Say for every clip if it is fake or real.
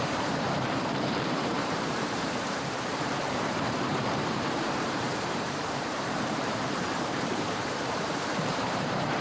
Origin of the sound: fake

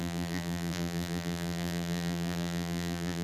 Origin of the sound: fake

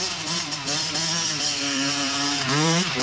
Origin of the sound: fake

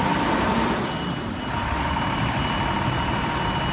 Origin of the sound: fake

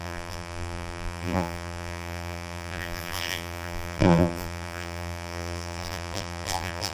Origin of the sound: fake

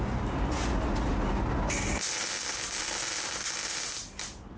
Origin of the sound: real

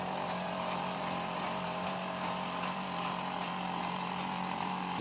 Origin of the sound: fake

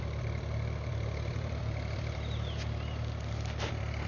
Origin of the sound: fake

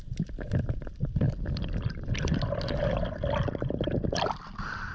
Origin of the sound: real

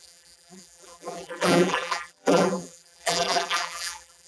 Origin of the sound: fake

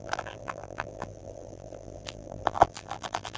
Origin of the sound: fake